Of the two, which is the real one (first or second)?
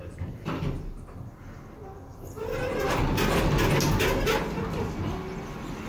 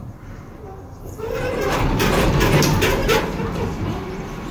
first